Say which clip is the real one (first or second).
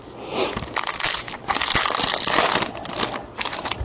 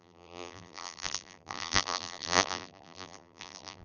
first